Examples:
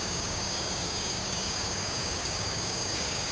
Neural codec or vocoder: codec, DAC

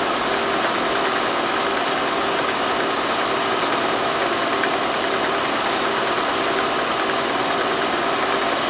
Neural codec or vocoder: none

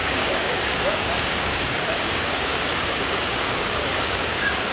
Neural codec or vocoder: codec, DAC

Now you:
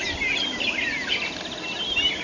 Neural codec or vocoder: none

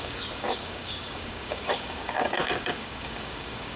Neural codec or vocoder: codec, DAC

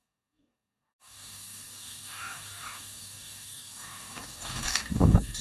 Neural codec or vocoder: codec, DAC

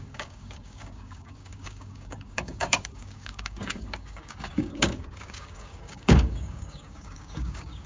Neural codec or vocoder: codec, DAC